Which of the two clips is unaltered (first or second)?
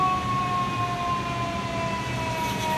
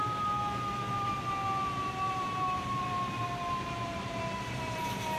first